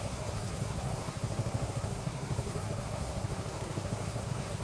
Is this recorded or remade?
remade